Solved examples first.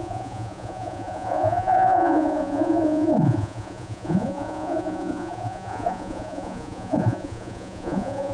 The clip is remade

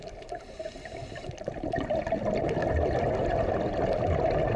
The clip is recorded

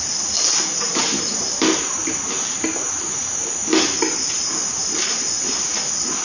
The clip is recorded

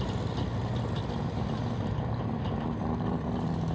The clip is recorded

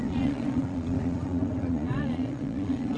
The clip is remade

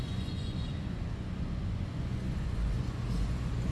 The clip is remade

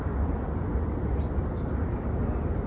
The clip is recorded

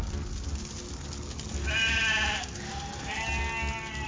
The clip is recorded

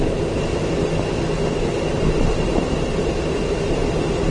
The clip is recorded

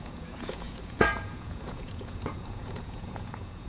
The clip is remade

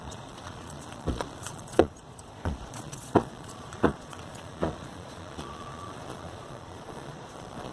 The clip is remade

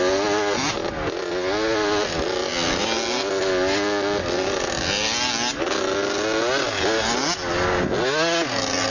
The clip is recorded